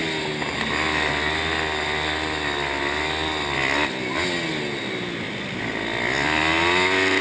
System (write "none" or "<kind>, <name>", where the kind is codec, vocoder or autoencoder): none